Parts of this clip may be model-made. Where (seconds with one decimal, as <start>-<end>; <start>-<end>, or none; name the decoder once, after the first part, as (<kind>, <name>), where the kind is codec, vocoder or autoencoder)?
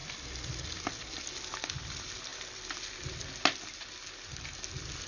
0.0-0.8 (vocoder, BigVGAN v2); 2.3-3.9